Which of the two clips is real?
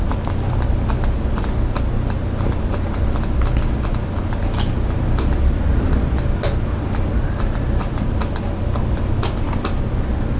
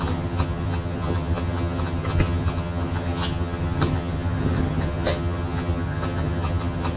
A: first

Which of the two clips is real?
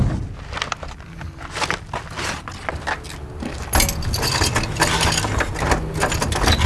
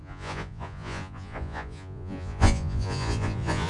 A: first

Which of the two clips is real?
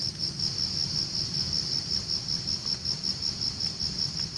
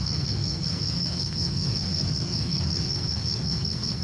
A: first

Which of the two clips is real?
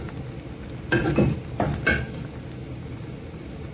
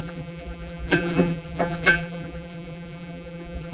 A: first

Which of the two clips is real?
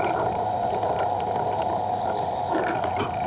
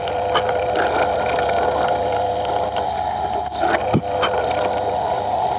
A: second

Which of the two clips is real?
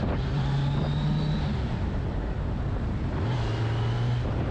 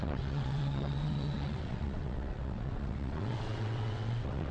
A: first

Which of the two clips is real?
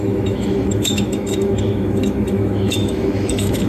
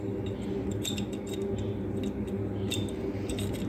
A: second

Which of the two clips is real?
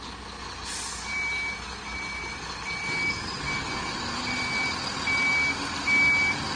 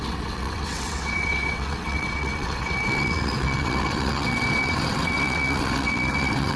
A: first